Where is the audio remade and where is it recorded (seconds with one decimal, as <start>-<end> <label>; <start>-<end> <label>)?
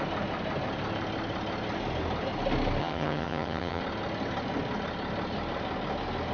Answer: 0.0-2.8 recorded; 2.8-3.8 remade; 3.8-6.3 recorded